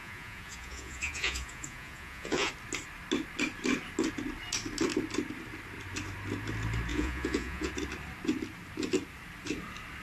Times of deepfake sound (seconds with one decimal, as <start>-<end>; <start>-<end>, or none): 0.0-2.5; 6.9-7.7

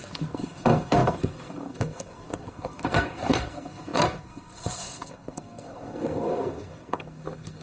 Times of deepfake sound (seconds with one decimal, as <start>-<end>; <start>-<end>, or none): 0.0-7.6

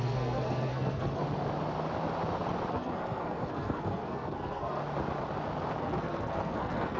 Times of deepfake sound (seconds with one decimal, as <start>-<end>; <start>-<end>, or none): 0.0-1.2; 2.7-4.8; 5.8-7.0

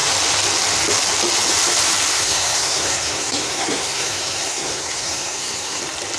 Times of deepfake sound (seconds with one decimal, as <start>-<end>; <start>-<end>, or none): 2.1-5.8

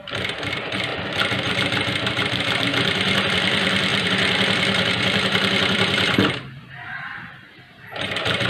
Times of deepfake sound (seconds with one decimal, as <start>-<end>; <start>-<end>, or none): 0.0-0.9; 1.5-2.7; 3.3-8.5

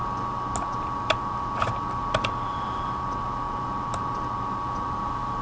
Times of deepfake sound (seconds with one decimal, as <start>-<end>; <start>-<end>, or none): none

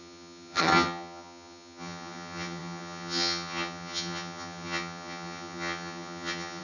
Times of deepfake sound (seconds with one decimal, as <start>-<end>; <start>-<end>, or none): 0.0-6.6

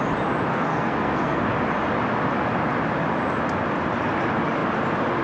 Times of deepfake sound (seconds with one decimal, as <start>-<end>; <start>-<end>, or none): 0.5-1.4